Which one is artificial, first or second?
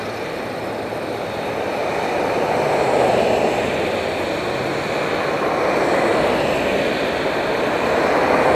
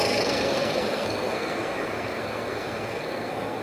second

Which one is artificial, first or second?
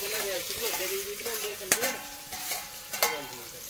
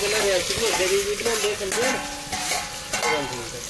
first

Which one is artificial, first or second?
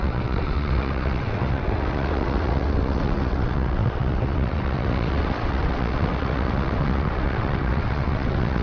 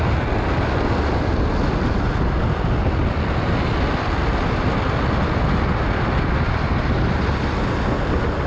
first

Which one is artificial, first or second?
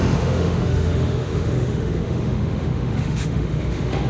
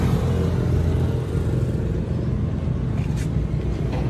first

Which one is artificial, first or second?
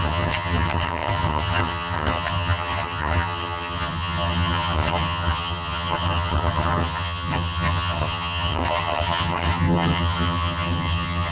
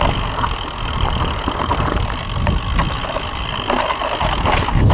first